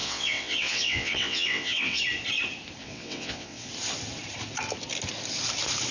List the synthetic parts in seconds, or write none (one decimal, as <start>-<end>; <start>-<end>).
0.0-2.0; 2.8-3.7